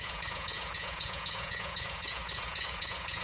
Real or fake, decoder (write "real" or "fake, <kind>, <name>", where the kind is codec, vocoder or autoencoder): fake, vocoder, Vocos